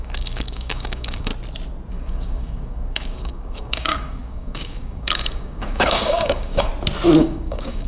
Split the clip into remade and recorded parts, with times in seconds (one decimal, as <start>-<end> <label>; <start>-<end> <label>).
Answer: 0.0-1.3 remade; 1.3-1.9 recorded; 1.9-6.7 remade; 6.7-7.2 recorded; 7.2-7.9 remade

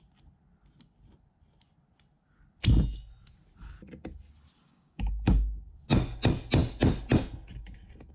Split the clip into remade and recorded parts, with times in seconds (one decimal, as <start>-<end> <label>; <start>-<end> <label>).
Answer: 0.0-4.6 recorded; 4.6-5.7 remade; 5.7-8.1 recorded